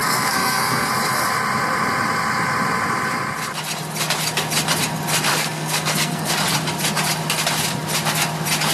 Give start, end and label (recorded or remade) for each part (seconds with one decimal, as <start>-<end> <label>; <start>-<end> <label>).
0.0-0.9 remade; 0.9-5.3 recorded; 5.3-6.3 remade; 6.3-8.7 recorded